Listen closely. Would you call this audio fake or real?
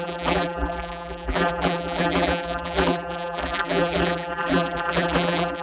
fake